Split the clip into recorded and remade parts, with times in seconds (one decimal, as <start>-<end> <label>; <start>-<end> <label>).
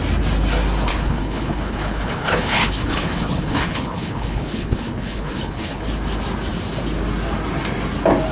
0.0-0.9 recorded; 0.9-5.9 remade; 5.9-8.3 recorded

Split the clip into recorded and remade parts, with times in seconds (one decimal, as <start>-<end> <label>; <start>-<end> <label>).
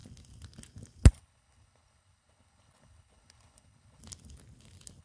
0.0-1.1 recorded; 1.1-4.0 remade; 4.0-5.0 recorded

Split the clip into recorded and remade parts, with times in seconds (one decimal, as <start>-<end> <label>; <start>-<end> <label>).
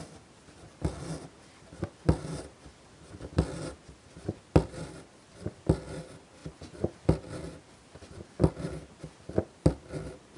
0.0-10.4 recorded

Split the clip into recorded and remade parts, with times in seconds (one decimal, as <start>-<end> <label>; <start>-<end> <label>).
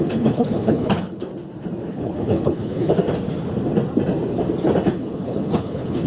0.0-1.3 remade; 1.3-1.9 recorded; 1.9-2.9 remade; 2.9-4.9 recorded; 4.9-6.1 remade